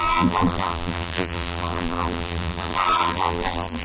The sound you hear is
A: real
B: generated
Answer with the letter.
B